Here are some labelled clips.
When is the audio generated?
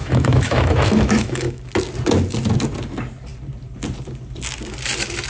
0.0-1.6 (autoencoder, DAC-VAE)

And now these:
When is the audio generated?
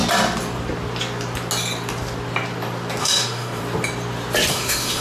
3.0-3.6 (autoencoder, DAC-VAE); 4.5-5.0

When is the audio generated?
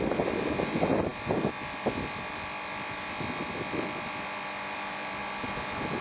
none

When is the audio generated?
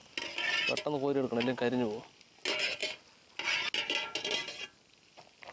none